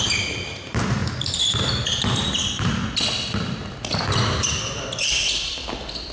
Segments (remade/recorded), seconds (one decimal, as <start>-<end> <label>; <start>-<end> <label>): 0.0-2.8 remade; 2.8-6.1 recorded

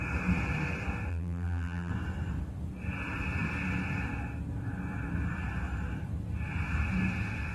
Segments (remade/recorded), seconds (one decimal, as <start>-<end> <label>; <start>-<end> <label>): 0.0-1.1 recorded; 1.1-1.9 remade; 1.9-7.5 recorded